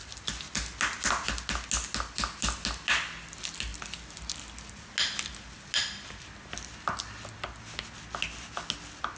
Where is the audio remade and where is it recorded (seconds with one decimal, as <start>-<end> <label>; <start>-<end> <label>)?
0.0-9.2 recorded